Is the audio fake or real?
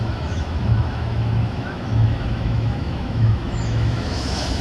fake